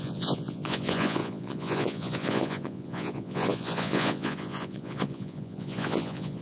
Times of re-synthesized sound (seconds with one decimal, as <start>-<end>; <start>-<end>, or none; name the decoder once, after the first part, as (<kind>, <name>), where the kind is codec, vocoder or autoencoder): 0.0-6.4 (vocoder, Vocos)